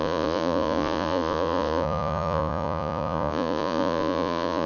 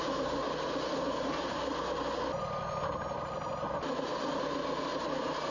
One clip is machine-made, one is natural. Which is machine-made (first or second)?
first